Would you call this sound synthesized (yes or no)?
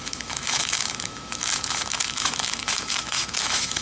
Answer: yes